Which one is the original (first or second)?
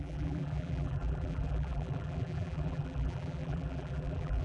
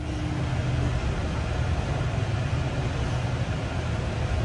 second